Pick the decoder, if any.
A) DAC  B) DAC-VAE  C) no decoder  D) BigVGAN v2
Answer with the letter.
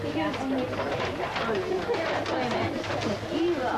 C